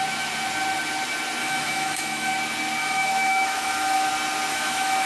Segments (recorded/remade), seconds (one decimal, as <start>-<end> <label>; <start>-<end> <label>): 0.0-1.4 recorded; 1.4-2.3 remade; 2.3-2.8 recorded; 2.8-4.1 remade; 4.1-4.5 recorded; 4.5-5.1 remade